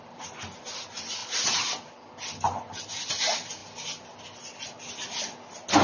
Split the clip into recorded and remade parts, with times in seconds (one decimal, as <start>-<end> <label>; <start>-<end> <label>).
0.0-5.8 recorded